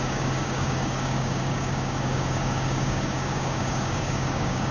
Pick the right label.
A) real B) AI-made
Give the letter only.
B